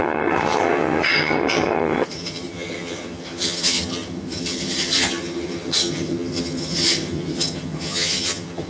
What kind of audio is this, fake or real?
fake